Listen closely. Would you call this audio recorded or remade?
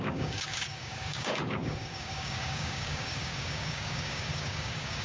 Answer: remade